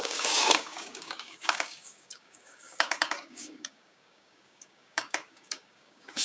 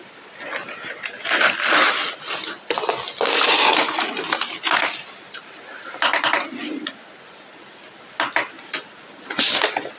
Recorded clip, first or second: second